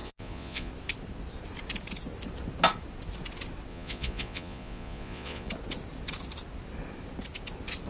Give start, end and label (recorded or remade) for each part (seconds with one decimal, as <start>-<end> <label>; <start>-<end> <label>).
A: 0.0-0.7 remade; 0.7-3.7 recorded; 3.7-5.5 remade; 5.5-7.9 recorded